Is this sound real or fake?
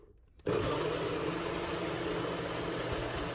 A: real